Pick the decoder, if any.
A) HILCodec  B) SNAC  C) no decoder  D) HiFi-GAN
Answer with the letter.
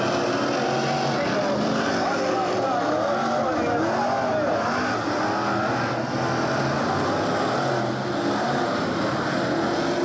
C